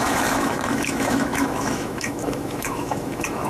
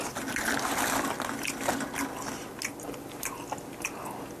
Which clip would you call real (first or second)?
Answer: second